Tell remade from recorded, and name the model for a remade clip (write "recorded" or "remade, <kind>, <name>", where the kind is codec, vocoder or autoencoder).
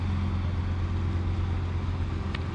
recorded